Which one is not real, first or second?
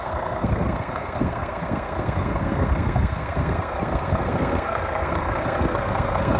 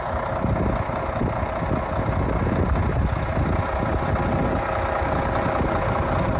first